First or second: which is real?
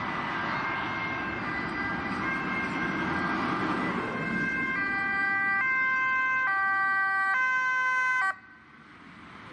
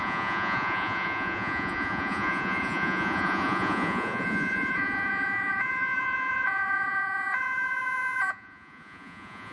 first